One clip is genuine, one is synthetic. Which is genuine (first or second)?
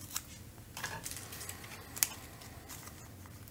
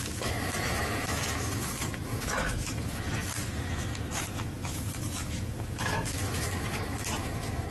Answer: first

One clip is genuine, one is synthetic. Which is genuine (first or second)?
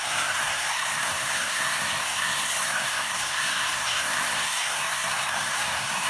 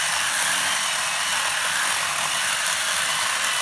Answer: second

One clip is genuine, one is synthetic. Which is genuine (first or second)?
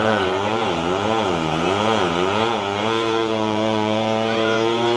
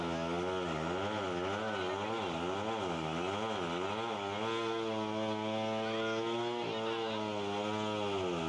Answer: second